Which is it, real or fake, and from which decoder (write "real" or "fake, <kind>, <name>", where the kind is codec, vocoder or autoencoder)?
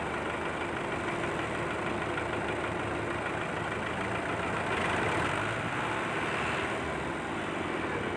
real